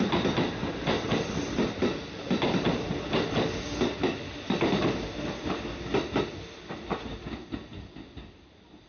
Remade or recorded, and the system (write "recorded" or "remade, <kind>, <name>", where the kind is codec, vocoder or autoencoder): recorded